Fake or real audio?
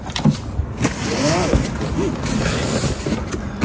real